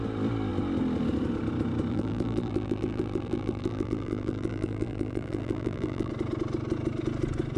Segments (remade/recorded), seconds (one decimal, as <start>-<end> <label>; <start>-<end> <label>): 0.0-1.9 recorded; 1.9-6.1 remade; 6.1-7.6 recorded